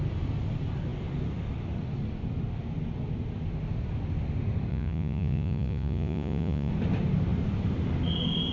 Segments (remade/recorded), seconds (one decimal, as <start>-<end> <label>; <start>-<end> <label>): 0.0-4.7 recorded; 4.7-6.7 remade; 6.7-8.5 recorded